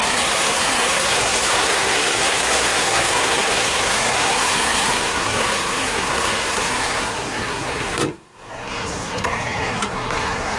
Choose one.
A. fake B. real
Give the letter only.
A